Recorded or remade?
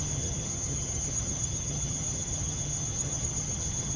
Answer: remade